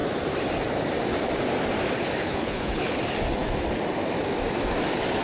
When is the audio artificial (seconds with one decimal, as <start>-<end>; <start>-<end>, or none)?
2.2-3.0